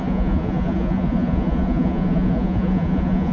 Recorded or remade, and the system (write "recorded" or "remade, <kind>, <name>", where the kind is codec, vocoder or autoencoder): remade, vocoder, Vocos